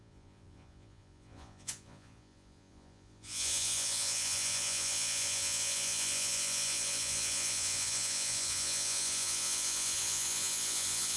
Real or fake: fake